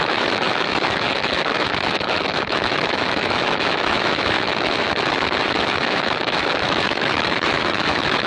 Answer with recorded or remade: remade